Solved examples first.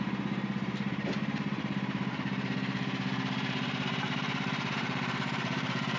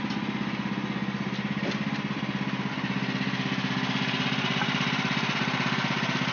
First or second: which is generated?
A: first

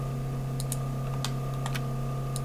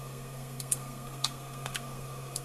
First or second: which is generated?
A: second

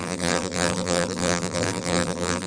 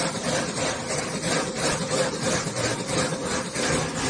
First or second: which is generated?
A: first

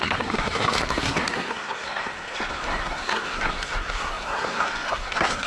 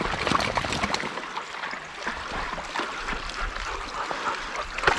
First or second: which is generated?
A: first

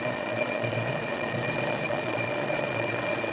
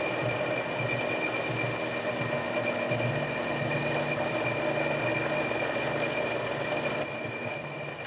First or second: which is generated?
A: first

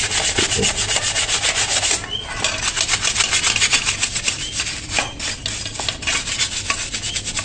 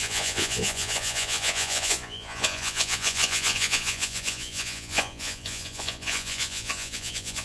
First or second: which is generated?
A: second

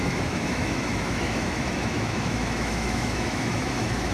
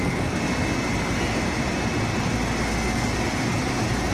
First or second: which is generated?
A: first